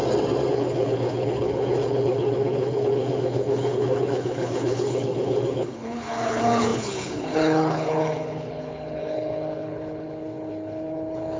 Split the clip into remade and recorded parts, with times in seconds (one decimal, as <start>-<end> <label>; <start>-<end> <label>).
0.0-0.5 recorded; 0.5-11.4 remade